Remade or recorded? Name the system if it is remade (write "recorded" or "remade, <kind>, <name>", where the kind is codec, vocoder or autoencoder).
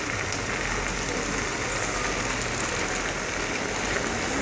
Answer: recorded